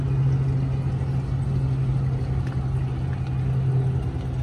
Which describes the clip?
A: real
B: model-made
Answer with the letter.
A